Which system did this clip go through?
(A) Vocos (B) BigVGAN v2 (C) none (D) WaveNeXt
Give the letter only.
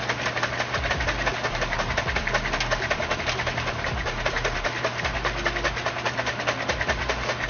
C